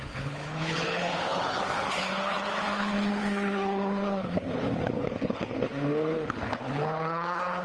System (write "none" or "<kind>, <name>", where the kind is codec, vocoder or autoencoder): codec, HILCodec